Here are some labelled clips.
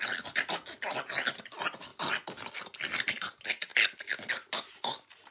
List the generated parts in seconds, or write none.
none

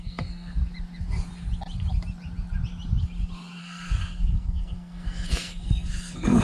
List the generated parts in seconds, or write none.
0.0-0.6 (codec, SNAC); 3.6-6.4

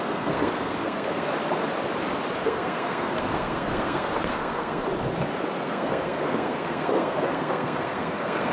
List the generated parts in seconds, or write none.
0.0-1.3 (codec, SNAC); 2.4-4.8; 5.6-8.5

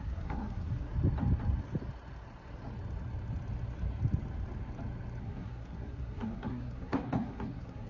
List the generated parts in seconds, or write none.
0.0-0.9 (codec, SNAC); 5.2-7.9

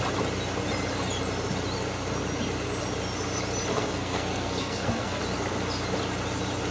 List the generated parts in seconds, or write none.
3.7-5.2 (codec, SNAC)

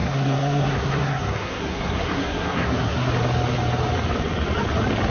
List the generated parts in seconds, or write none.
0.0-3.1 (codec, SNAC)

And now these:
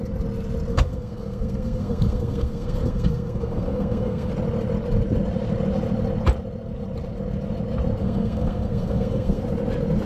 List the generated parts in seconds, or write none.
0.7-4.3 (codec, SNAC); 8.0-9.4

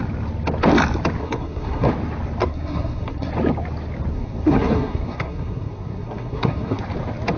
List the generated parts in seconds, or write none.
1.2-1.9 (codec, SNAC); 2.4-3.3; 4.1-6.8